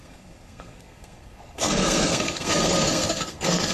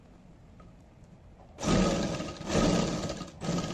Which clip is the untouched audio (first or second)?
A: second